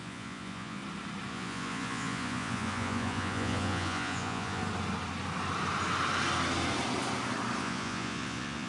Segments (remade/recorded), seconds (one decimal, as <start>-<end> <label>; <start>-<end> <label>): 0.0-0.8 remade; 0.8-1.3 recorded; 1.3-4.6 remade; 4.6-7.6 recorded; 7.6-8.7 remade